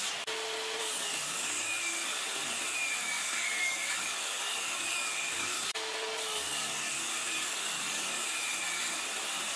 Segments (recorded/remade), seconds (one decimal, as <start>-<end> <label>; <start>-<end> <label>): 0.0-0.8 recorded; 0.8-2.2 remade; 2.2-3.0 recorded; 3.0-8.2 remade; 8.2-9.6 recorded